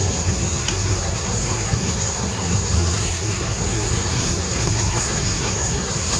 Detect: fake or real fake